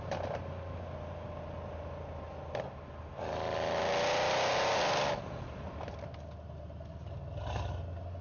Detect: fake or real real